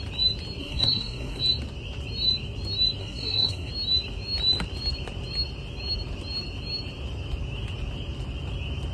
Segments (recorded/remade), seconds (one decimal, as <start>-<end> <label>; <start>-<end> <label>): 0.0-0.6 recorded; 0.6-1.4 remade; 1.4-3.0 recorded; 3.0-3.7 remade; 3.7-8.9 recorded